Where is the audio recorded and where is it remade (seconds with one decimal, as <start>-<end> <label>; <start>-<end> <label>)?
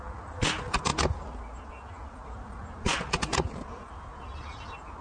0.0-5.0 recorded